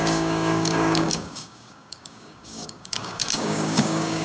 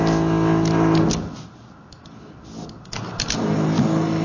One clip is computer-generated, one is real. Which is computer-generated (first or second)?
first